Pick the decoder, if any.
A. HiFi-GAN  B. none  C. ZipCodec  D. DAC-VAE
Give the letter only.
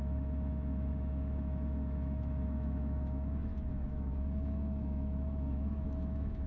D